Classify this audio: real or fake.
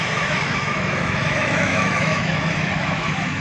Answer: fake